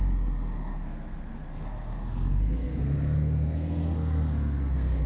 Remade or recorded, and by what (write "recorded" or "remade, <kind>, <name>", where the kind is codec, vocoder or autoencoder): remade, codec, SNAC